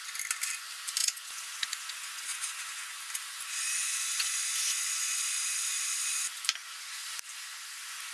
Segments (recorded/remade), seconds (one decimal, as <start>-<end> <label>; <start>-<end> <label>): 0.0-1.0 recorded; 1.0-3.1 remade; 3.1-3.8 recorded; 3.8-5.3 remade; 5.3-8.1 recorded